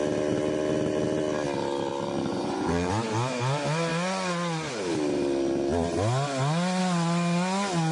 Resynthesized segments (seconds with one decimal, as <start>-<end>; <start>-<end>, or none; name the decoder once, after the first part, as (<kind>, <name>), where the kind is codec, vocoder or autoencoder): 2.3-2.9 (vocoder, Vocos)